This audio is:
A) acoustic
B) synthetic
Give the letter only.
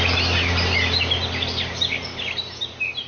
A